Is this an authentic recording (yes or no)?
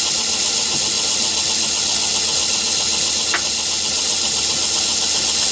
yes